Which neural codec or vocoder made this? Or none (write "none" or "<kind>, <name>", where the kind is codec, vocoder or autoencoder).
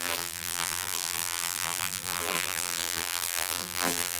vocoder, BigVGAN v2